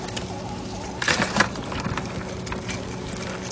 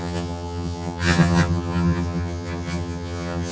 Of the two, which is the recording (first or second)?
first